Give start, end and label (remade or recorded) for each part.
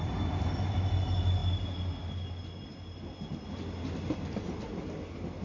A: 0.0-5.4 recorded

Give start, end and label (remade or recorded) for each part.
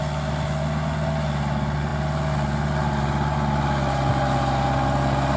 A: 0.0-5.4 recorded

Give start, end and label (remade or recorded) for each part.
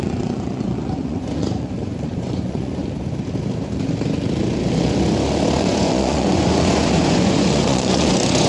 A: 0.0-2.8 remade; 2.8-5.6 recorded; 5.6-8.5 remade